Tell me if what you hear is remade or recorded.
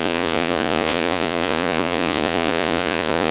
remade